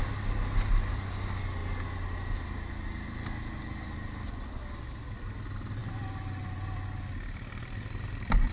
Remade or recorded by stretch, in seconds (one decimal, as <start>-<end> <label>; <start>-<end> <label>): 0.0-8.5 recorded